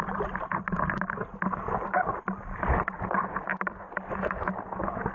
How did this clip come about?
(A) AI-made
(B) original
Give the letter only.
B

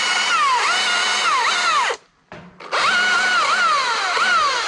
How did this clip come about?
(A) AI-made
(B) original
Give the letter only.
B